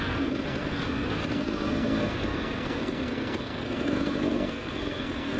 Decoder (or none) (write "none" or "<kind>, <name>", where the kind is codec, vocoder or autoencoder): codec, SNAC